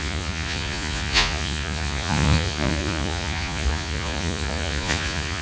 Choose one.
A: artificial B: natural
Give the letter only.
A